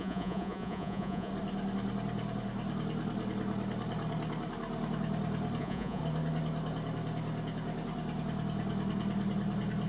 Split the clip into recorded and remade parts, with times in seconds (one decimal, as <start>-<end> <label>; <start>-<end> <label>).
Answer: 0.0-1.3 remade; 1.3-5.6 recorded; 5.6-6.0 remade; 6.0-9.9 recorded